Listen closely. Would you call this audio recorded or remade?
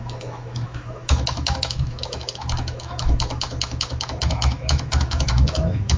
remade